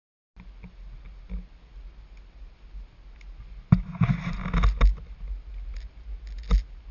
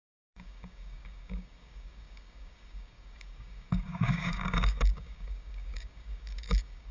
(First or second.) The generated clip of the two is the second